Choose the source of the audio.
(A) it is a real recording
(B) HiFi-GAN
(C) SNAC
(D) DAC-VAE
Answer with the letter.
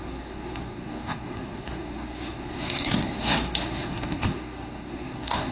C